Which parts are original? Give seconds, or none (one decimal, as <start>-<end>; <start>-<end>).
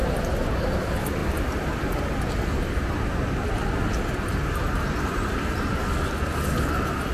0.0-7.1